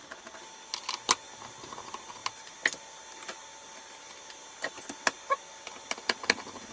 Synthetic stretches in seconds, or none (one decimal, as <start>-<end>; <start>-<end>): none